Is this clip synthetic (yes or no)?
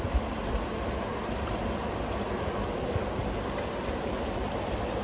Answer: no